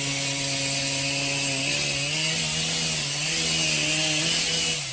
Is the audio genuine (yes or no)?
yes